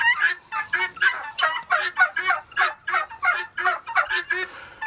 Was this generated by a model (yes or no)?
no